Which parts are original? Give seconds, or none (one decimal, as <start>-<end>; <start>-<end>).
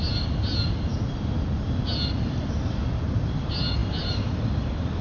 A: 0.0-5.0